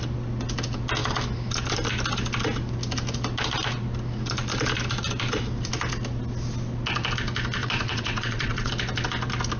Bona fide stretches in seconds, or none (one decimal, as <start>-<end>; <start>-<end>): 0.0-7.6; 8.7-9.6